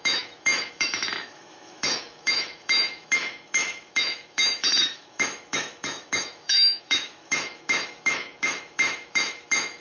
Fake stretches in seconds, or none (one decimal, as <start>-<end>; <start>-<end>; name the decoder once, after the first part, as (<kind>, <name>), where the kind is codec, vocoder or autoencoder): 0.0-9.8 (autoencoder, DAC-VAE)